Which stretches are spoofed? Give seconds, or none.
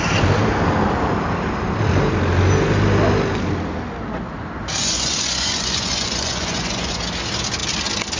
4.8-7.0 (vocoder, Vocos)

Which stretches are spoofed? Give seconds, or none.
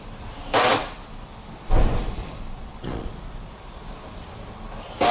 2.2-3.1 (vocoder, Vocos)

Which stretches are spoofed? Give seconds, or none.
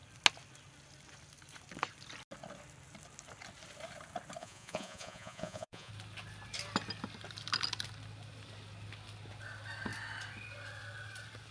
4.4-5.9 (vocoder, Vocos)